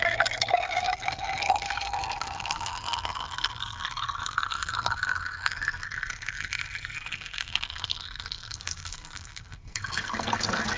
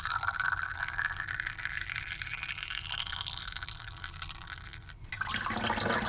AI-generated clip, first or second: first